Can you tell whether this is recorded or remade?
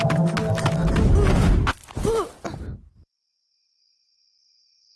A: recorded